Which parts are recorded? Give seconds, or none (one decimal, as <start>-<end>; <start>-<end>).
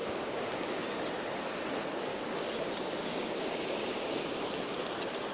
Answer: 1.1-2.1; 4.2-5.3